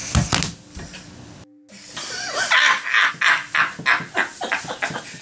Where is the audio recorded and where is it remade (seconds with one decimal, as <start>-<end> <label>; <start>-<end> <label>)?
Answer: 0.0-5.2 recorded